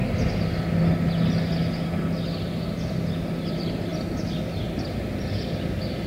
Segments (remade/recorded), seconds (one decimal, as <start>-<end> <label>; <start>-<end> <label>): 0.0-6.1 recorded